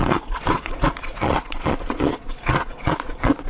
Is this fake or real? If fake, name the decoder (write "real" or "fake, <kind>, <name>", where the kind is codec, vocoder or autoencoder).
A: fake, vocoder, Vocos